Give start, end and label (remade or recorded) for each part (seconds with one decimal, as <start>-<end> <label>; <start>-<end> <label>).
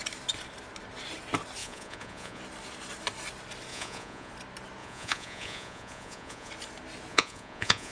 0.0-1.6 recorded; 1.6-2.4 remade; 2.4-3.7 recorded; 3.7-4.3 remade; 4.3-4.8 recorded; 4.8-6.5 remade; 6.5-7.1 recorded; 7.1-7.9 remade